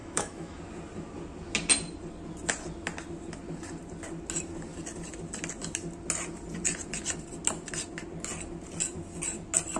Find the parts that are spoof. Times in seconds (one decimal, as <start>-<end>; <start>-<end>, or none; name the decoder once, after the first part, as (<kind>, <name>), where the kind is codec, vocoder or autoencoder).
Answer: 0.0-0.6 (autoencoder, DAC-VAE)